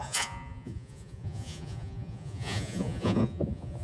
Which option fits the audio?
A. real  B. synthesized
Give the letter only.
B